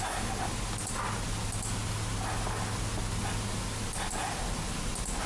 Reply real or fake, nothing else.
real